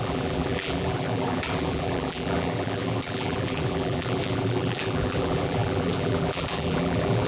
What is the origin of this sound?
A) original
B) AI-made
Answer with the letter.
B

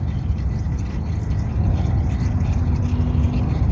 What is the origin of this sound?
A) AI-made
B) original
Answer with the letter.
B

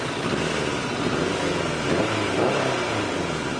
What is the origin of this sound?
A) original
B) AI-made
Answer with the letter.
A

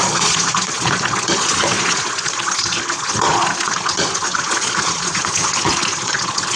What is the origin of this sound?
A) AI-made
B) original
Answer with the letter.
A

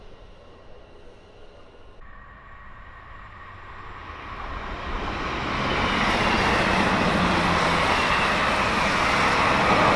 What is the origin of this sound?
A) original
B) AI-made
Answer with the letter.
A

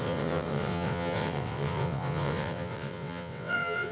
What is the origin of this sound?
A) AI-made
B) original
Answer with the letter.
A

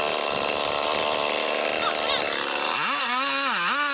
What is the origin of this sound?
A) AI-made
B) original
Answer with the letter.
B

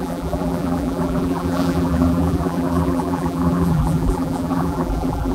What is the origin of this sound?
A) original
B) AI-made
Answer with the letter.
B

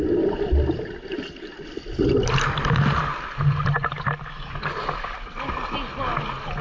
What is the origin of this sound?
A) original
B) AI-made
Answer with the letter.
A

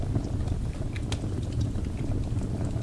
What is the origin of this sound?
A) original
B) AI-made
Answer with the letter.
A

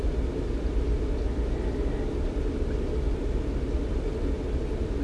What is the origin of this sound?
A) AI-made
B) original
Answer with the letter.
B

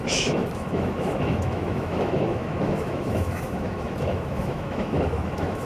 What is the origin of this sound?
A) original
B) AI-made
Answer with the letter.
B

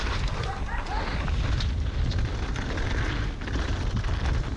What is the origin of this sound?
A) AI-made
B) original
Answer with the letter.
B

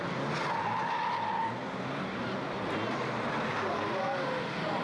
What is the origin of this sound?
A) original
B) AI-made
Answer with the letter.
A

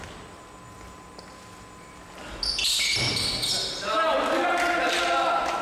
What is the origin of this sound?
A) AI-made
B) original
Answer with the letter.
B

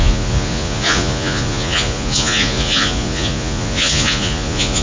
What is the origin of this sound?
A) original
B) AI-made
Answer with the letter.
B